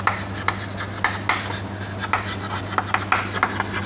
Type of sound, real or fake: real